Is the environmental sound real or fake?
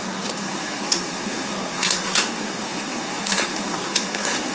fake